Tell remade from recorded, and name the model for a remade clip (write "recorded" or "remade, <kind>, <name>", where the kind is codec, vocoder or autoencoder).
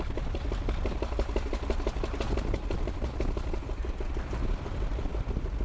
recorded